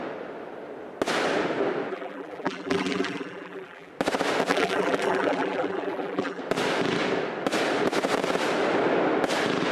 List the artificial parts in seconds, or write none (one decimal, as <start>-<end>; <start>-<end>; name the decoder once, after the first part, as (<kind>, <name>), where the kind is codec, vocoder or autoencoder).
1.9-3.9 (vocoder, BigVGAN v2); 4.5-6.4